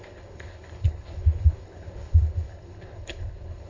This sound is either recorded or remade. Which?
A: remade